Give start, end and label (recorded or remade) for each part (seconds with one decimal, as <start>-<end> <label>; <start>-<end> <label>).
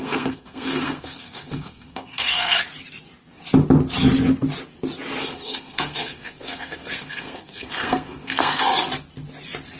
0.0-2.6 remade; 2.6-5.2 recorded; 5.2-8.6 remade; 8.6-9.8 recorded